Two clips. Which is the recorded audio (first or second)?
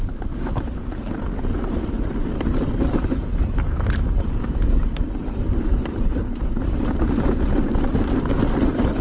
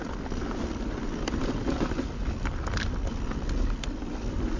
second